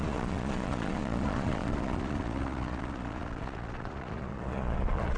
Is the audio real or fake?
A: fake